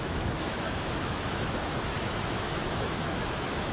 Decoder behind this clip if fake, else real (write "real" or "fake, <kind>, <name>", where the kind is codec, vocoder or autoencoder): fake, autoencoder, DAC-VAE